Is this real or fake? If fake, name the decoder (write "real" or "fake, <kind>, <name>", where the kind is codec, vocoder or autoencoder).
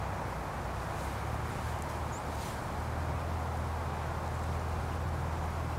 real